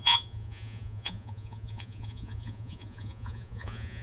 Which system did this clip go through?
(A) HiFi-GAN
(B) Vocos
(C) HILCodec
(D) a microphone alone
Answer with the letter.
B